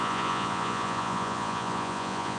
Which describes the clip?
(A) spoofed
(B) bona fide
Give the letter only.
A